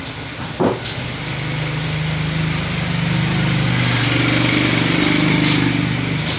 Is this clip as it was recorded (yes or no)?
yes